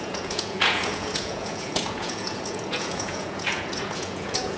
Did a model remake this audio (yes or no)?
yes